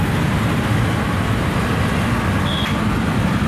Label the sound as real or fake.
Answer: real